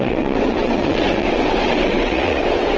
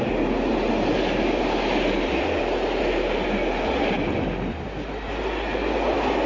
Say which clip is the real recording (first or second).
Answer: second